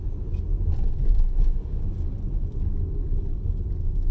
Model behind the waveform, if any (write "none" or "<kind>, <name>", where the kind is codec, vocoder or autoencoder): none